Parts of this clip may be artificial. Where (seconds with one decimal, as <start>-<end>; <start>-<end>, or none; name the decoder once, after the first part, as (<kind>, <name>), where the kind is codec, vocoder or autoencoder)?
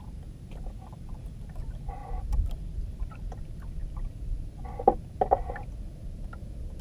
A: 2.0-3.4 (vocoder, BigVGAN v2)